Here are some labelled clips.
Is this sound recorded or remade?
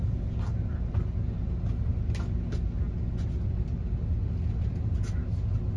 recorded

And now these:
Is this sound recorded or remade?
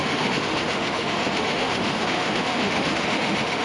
remade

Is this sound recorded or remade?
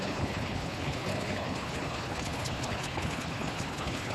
remade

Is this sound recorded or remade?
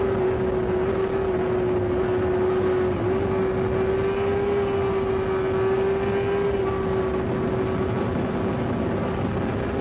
recorded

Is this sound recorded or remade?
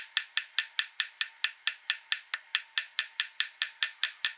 recorded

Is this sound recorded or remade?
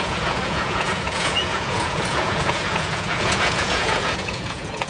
remade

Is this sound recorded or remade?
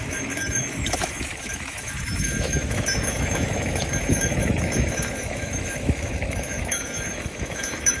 remade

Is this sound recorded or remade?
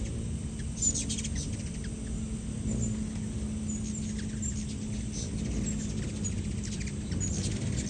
recorded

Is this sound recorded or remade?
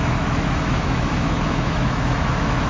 remade